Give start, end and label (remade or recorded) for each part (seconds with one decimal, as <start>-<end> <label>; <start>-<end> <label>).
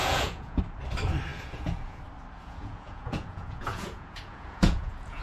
0.0-0.6 remade; 0.6-1.3 recorded; 1.3-2.0 remade; 2.0-2.4 recorded; 2.4-5.2 remade